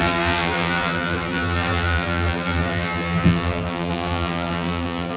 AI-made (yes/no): yes